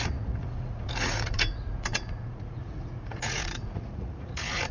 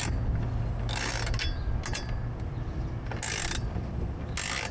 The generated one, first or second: first